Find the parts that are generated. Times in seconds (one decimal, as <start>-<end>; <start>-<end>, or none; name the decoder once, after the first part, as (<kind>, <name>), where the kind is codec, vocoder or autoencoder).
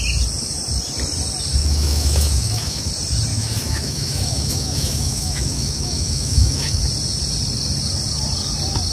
1.6-2.9 (autoencoder, DAC-VAE); 3.3-6.8